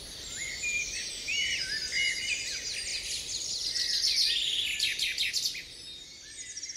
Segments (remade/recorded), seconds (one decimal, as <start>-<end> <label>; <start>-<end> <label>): 0.0-6.8 recorded